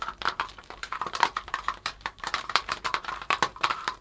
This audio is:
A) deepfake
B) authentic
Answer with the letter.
A